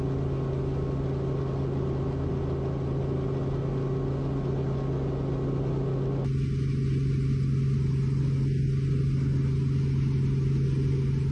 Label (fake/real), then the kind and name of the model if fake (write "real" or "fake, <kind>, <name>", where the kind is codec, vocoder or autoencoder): real